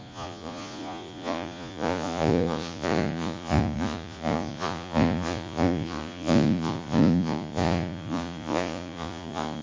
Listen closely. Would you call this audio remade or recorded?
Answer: remade